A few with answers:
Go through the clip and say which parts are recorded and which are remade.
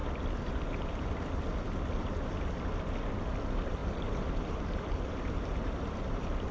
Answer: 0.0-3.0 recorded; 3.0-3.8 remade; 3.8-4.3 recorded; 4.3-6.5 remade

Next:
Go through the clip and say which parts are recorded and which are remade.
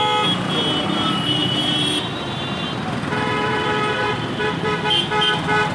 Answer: 0.0-1.4 recorded; 1.4-4.8 remade; 4.8-5.7 recorded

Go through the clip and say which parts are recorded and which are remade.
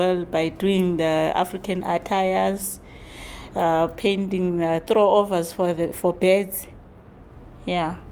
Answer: 0.0-3.4 remade; 3.4-7.3 recorded; 7.3-8.1 remade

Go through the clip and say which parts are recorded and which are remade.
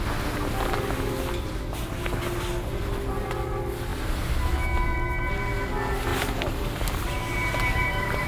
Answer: 0.0-6.1 recorded; 6.1-8.3 remade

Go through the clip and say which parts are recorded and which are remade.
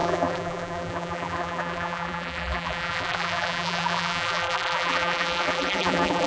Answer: 0.0-6.3 remade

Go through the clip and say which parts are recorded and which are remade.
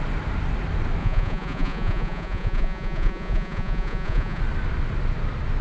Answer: 0.0-1.0 recorded; 1.0-4.4 remade; 4.4-5.6 recorded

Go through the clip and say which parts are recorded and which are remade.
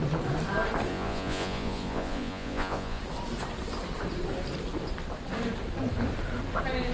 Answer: 0.0-0.9 recorded; 0.9-3.0 remade; 3.0-6.9 recorded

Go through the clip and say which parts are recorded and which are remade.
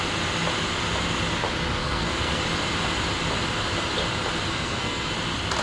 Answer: 0.0-1.8 recorded; 1.8-2.4 remade; 2.4-4.5 recorded; 4.5-5.1 remade; 5.1-5.6 recorded